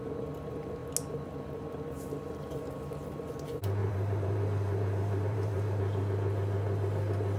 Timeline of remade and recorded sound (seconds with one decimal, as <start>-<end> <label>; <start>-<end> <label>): 0.0-3.8 recorded; 3.8-5.8 remade; 5.8-7.4 recorded